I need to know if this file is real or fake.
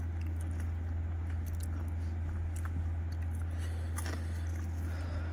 real